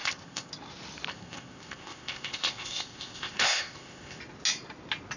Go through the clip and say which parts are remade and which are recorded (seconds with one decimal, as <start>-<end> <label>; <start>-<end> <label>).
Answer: 0.0-0.5 remade; 0.5-1.1 recorded; 1.1-4.2 remade; 4.2-5.2 recorded

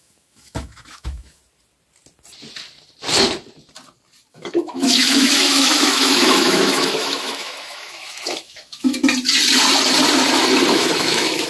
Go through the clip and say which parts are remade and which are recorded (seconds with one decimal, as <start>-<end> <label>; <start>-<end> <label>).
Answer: 0.0-1.4 remade; 1.4-4.3 recorded; 4.3-9.0 remade; 9.0-10.7 recorded; 10.7-11.5 remade